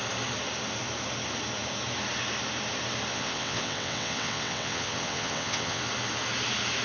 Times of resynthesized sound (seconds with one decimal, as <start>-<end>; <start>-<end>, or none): 3.1-5.8